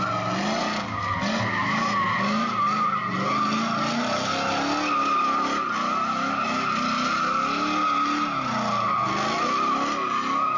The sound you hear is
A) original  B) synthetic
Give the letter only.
A